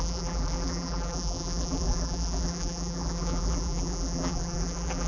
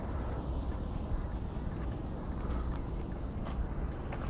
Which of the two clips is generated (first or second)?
first